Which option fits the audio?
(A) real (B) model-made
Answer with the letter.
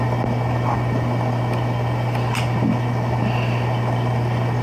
A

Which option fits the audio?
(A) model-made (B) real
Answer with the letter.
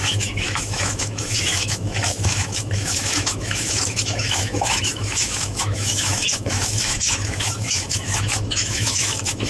A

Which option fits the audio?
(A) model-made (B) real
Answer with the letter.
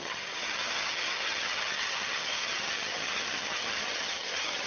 A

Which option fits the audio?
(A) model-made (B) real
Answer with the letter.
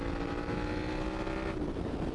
B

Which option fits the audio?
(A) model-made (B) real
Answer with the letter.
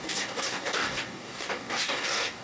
A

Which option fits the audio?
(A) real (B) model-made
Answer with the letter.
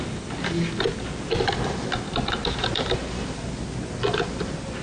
A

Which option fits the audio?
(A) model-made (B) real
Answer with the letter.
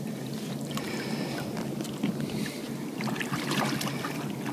B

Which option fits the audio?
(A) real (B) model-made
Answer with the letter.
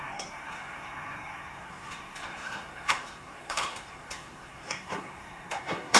B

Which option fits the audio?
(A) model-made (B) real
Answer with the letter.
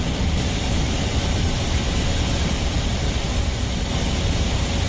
B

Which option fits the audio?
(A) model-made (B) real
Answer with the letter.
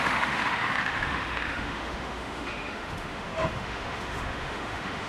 A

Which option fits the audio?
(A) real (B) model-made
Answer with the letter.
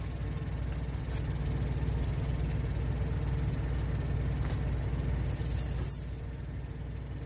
A